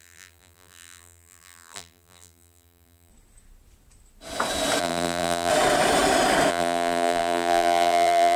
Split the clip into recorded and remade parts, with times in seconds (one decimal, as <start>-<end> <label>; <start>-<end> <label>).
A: 0.0-3.1 remade; 3.1-4.8 recorded; 4.8-5.5 remade; 5.5-6.5 recorded; 6.5-8.4 remade